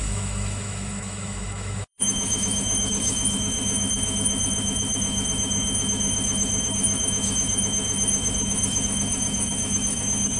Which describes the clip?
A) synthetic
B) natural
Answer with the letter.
A